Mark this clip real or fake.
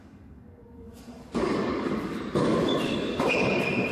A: fake